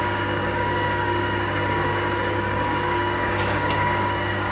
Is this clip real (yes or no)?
no